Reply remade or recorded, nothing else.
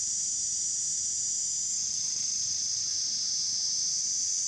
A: recorded